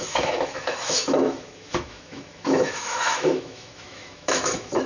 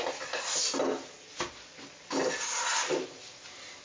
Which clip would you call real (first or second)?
second